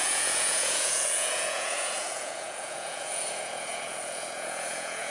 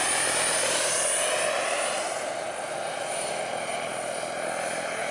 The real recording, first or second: second